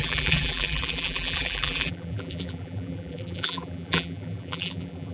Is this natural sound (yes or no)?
no